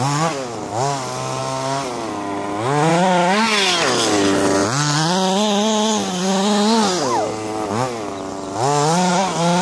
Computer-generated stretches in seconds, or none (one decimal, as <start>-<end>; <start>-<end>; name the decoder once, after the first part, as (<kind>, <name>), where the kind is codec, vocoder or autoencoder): none